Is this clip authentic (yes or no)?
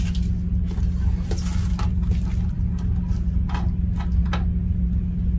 yes